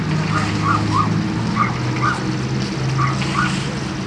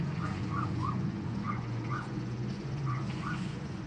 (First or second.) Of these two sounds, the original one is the first